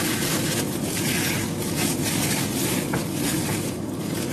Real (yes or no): no